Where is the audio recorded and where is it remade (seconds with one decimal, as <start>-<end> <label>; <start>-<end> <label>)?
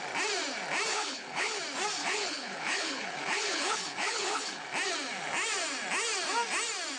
0.0-0.9 recorded; 0.9-1.6 remade; 1.6-2.0 recorded; 2.0-4.6 remade; 4.6-7.0 recorded